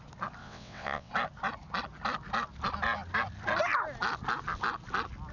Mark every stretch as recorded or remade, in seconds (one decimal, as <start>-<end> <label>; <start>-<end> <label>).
0.0-0.4 recorded; 0.4-1.1 remade; 1.1-5.3 recorded